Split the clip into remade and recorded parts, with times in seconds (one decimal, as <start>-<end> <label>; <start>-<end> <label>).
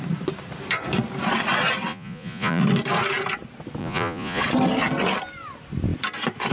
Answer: 0.0-1.9 recorded; 1.9-2.6 remade; 2.6-3.8 recorded; 3.8-4.4 remade; 4.4-6.5 recorded